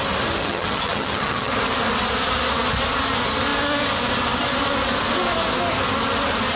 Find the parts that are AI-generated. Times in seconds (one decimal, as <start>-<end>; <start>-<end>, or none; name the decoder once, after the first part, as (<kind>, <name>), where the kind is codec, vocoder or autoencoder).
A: 0.4-1.5 (vocoder, HiFi-GAN)